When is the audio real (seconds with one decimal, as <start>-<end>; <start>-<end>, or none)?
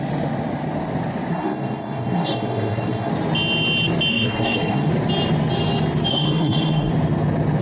0.0-1.3; 3.1-4.1; 4.9-6.1; 6.9-7.6